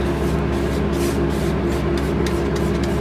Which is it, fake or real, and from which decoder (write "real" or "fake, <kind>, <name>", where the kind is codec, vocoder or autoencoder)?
real